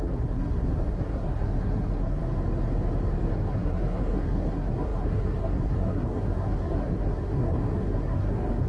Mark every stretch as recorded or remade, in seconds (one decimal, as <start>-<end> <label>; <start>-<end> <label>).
0.0-2.2 remade; 2.2-3.3 recorded; 3.3-8.7 remade